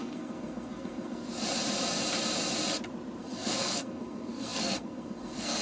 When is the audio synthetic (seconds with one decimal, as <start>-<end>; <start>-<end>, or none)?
0.0-1.2; 3.2-5.6